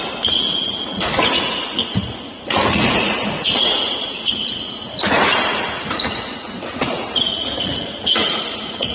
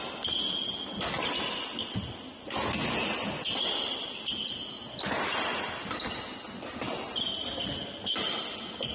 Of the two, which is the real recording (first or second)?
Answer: second